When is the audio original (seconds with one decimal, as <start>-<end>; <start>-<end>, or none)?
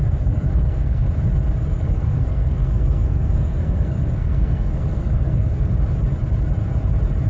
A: 1.1-1.7; 5.7-7.3